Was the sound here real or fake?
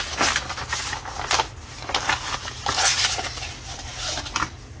real